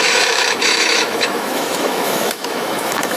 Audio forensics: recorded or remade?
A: remade